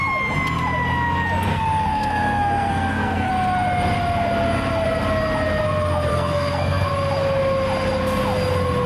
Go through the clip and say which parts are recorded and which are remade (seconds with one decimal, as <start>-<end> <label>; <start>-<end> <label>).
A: 0.0-1.5 recorded; 1.5-3.3 remade; 3.3-6.1 recorded; 6.1-6.9 remade; 6.9-8.9 recorded